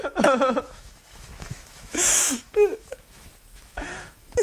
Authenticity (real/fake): fake